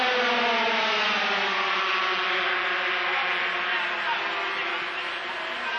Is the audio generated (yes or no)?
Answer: no